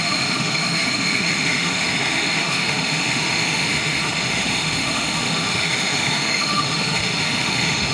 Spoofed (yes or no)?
yes